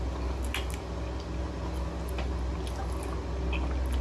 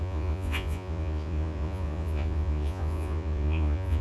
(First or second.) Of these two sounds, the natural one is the first